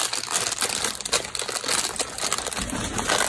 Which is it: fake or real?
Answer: real